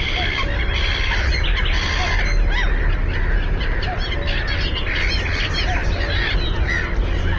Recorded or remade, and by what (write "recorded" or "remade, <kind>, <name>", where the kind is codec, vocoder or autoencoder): recorded